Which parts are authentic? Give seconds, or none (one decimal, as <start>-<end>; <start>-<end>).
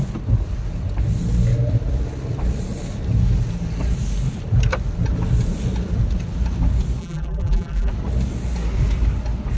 0.0-7.0; 7.9-9.6